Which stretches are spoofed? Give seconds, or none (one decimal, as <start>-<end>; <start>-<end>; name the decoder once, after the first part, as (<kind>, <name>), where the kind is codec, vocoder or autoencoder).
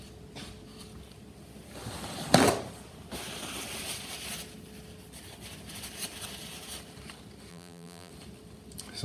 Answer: 7.5-8.1 (vocoder, BigVGAN v2)